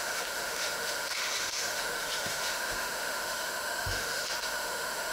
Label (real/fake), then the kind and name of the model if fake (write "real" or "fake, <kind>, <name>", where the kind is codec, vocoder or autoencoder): fake, autoencoder, DAC-VAE